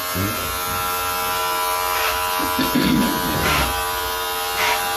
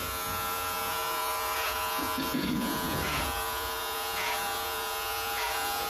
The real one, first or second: first